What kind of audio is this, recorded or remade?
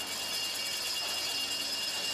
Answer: recorded